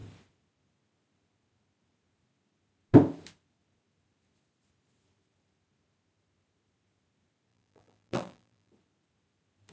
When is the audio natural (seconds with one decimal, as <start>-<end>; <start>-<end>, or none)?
0.0-7.5; 8.7-9.7